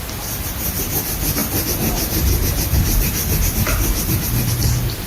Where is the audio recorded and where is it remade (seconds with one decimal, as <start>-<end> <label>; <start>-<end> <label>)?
0.0-5.1 recorded